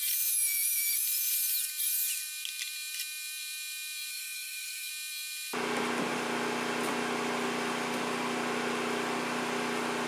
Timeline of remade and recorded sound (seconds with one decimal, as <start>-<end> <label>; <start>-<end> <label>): 0.0-4.1 recorded; 4.1-4.9 remade; 4.9-10.1 recorded